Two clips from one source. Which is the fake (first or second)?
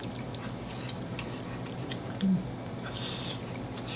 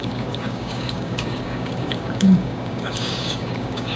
second